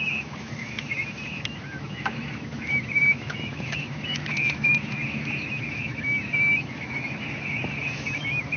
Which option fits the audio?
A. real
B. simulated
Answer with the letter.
B